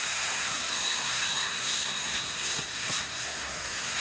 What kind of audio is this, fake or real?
fake